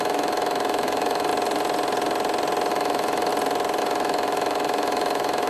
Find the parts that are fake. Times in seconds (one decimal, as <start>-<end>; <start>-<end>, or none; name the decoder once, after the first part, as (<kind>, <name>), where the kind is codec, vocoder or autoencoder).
0.0-1.3 (autoencoder, DAC-VAE); 2.7-3.3; 3.8-5.5